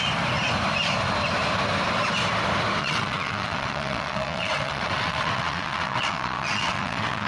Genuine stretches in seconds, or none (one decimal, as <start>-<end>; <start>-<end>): 0.0-2.8